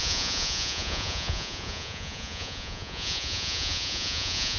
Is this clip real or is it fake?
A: fake